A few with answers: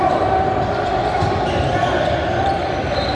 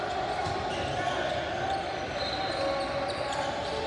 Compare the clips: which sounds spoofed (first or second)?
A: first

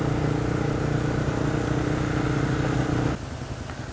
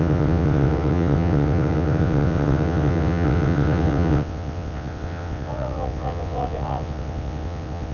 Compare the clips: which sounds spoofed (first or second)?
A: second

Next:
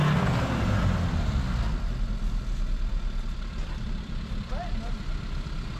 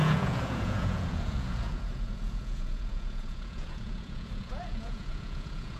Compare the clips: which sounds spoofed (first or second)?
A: second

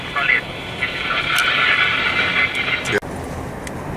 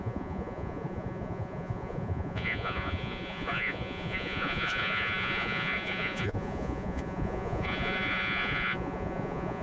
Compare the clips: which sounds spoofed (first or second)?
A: second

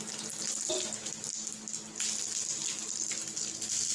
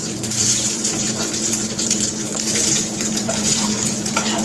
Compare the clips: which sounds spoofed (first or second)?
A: second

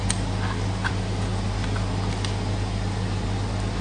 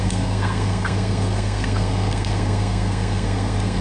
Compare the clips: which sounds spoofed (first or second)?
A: second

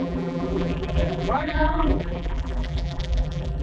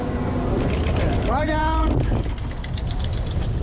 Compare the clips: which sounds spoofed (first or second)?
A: first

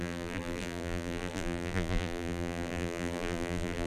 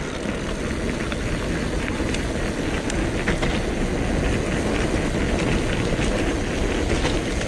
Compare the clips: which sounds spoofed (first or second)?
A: first